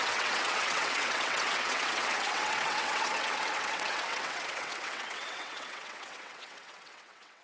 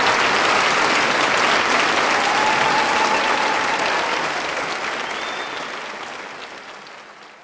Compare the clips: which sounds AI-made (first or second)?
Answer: first